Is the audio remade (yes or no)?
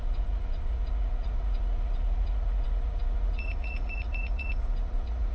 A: yes